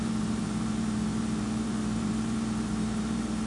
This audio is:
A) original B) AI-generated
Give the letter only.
B